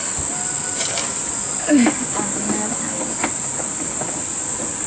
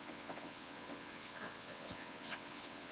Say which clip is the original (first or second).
first